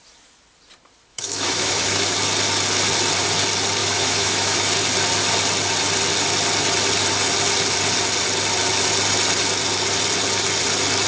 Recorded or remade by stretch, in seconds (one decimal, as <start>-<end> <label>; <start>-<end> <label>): 0.0-1.1 recorded; 1.1-2.1 remade; 2.1-3.8 recorded; 3.8-4.7 remade; 4.7-11.1 recorded